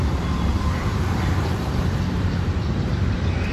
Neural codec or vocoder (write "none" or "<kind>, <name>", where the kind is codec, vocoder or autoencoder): vocoder, BigVGAN v2